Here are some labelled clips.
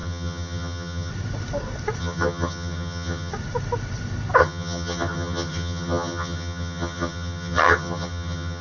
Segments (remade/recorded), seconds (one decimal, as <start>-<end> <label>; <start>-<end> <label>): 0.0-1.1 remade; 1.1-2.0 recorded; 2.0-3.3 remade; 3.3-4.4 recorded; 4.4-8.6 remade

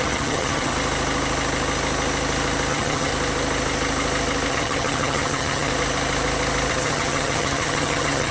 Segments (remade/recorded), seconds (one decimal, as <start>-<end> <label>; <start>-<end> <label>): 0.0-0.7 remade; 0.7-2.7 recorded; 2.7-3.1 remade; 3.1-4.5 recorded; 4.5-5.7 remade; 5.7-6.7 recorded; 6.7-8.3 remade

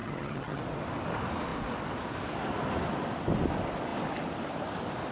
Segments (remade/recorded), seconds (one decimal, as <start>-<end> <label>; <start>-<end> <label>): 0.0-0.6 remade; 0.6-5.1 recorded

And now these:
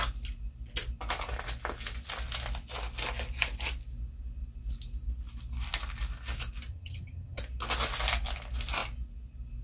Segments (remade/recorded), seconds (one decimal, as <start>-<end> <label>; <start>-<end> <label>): 0.0-6.7 recorded; 6.7-7.4 remade; 7.4-9.6 recorded

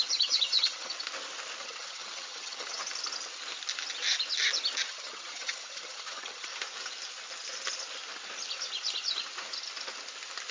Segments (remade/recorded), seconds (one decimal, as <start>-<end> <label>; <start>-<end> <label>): 0.0-0.9 remade; 0.9-1.6 recorded; 1.6-2.8 remade; 2.8-4.9 recorded; 4.9-6.5 remade; 6.5-10.5 recorded